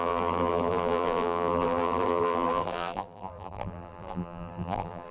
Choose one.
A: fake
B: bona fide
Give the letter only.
A